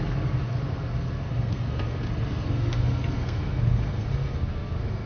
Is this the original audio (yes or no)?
no